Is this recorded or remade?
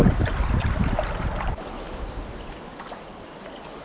recorded